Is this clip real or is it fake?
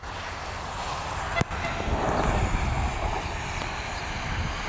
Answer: real